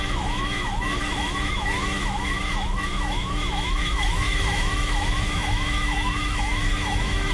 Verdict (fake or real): fake